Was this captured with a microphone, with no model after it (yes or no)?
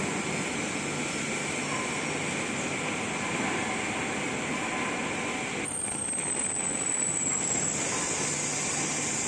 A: yes